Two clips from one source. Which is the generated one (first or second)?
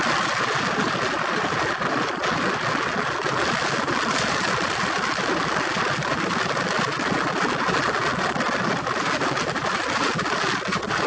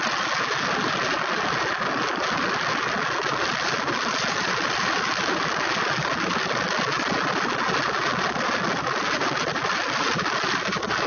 first